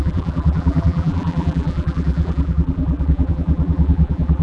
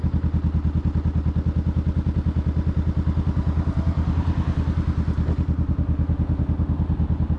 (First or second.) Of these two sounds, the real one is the second